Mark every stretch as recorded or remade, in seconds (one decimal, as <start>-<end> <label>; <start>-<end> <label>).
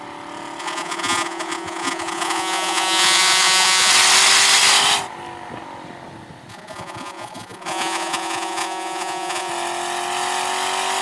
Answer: 0.0-0.6 recorded; 0.6-3.9 remade; 3.9-6.5 recorded; 6.5-9.5 remade; 9.5-11.0 recorded